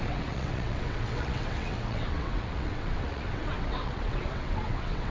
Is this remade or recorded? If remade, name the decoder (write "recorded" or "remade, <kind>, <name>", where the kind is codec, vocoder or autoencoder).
remade, vocoder, WaveNeXt